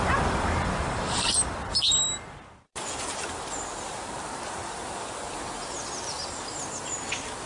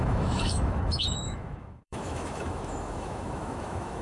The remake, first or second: second